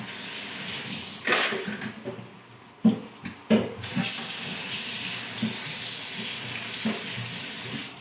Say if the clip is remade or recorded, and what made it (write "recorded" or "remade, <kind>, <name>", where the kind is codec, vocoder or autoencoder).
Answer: recorded